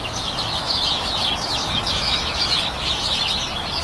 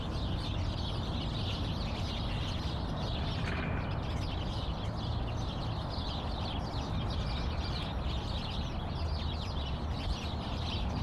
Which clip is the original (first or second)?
second